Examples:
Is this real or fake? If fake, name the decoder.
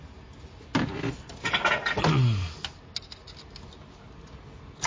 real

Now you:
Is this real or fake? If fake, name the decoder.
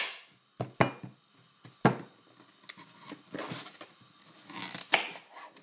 real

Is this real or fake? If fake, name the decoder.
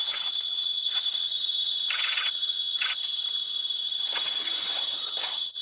fake, vocoder, HiFi-GAN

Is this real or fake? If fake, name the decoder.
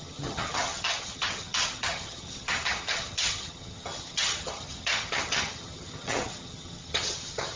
fake, vocoder, HiFi-GAN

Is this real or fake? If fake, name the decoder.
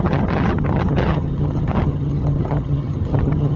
fake, vocoder, HiFi-GAN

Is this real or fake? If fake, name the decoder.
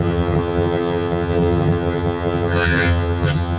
fake, vocoder, HiFi-GAN